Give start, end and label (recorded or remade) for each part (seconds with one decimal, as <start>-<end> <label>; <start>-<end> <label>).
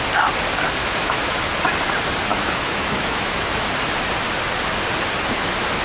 0.0-0.8 recorded; 0.8-1.4 remade; 1.4-2.3 recorded; 2.3-3.7 remade; 3.7-5.8 recorded